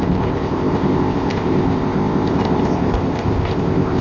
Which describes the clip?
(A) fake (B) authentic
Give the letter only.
A